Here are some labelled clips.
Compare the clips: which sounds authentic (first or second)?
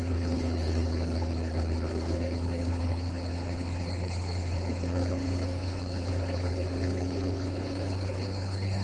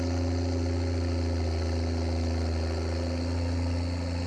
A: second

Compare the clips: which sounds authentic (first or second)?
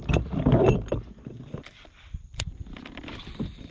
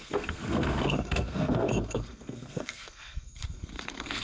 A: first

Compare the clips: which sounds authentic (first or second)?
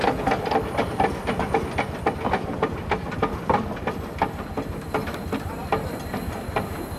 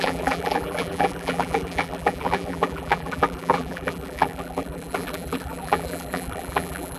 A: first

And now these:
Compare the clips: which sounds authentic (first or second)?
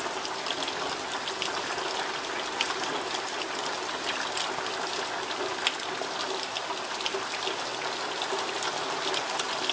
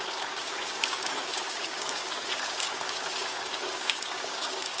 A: first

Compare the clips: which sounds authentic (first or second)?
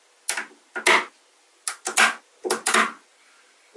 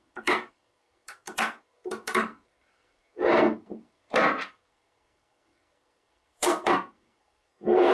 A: first